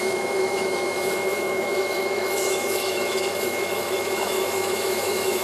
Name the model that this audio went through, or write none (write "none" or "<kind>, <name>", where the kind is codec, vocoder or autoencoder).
autoencoder, DAC-VAE